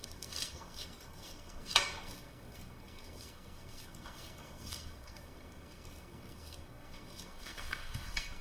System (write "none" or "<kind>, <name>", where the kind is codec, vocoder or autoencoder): codec, SNAC